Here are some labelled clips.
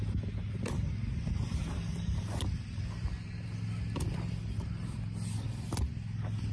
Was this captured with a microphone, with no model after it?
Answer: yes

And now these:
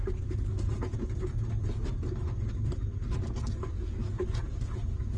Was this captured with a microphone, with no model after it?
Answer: yes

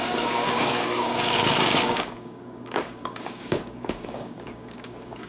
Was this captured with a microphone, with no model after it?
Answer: no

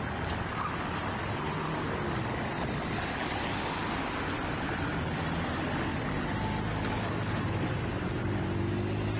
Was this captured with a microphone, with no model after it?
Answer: yes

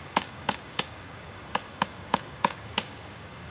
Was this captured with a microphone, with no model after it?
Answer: no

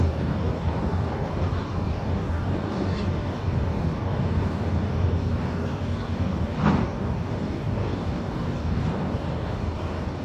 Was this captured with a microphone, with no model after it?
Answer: no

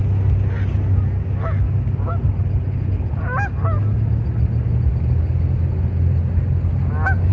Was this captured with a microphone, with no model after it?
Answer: yes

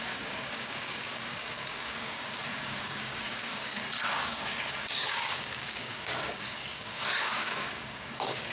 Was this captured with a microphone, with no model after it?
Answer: no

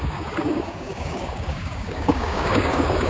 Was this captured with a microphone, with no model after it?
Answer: no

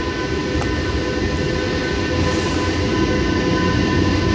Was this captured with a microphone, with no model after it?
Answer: yes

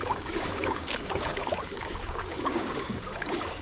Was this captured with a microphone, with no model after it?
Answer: no